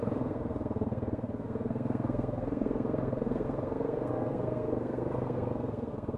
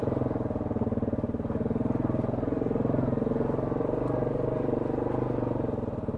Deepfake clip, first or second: first